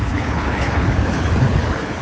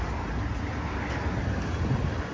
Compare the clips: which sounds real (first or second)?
second